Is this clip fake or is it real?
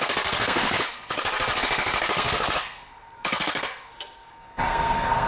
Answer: fake